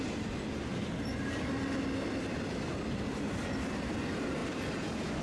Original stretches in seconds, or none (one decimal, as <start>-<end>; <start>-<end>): 0.0-5.2